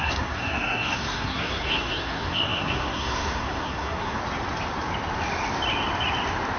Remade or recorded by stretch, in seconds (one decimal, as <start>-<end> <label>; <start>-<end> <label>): 0.0-4.2 remade; 4.2-6.6 recorded